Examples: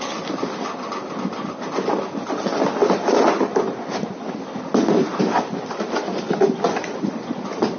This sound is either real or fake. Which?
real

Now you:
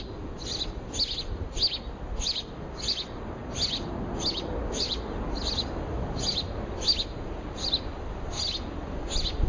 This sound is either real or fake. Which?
real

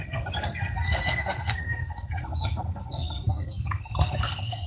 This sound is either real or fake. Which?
fake